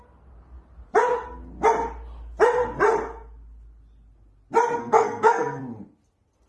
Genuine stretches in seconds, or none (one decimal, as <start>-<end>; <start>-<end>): 0.0-4.8; 5.6-6.5